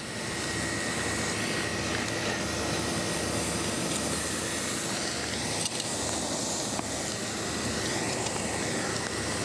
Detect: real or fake real